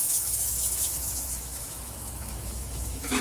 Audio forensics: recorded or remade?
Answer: remade